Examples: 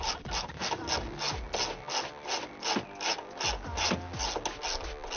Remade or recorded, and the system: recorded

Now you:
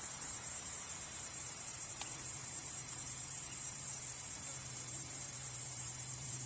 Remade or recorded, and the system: remade, vocoder, BigVGAN v2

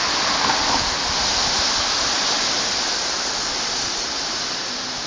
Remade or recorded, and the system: recorded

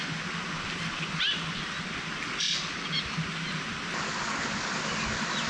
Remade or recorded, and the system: recorded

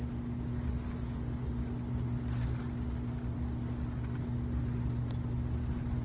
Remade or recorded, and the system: recorded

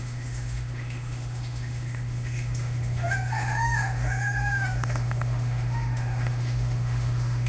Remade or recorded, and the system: remade, autoencoder, DAC-VAE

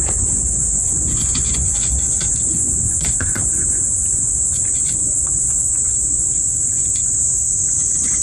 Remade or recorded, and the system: remade, vocoder, Vocos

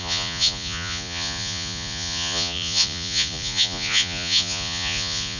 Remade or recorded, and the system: remade, vocoder, Vocos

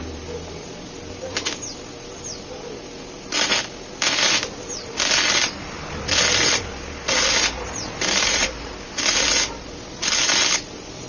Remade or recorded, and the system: recorded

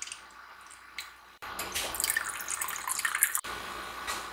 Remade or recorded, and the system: recorded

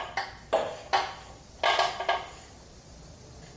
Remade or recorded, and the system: recorded